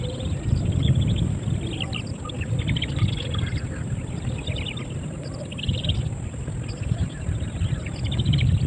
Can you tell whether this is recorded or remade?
recorded